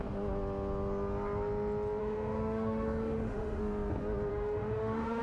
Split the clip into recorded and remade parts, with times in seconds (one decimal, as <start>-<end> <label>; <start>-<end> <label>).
0.0-2.0 recorded; 2.0-3.6 remade; 3.6-4.3 recorded; 4.3-5.2 remade